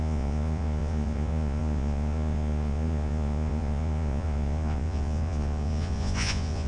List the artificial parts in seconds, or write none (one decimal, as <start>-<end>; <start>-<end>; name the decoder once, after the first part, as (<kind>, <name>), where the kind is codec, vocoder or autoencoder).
0.0-6.7 (vocoder, Vocos)